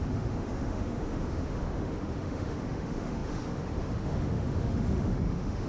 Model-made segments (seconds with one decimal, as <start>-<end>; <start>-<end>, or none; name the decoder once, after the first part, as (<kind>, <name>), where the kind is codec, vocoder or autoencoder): 0.0-5.7 (autoencoder, DAC-VAE)